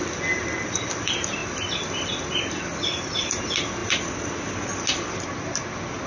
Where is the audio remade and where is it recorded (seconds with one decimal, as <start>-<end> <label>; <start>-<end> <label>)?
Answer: 0.0-6.1 recorded